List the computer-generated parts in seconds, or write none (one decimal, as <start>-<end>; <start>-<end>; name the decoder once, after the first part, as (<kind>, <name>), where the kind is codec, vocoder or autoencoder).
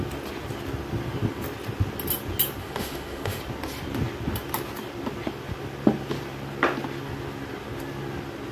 2.6-3.4 (autoencoder, DAC-VAE)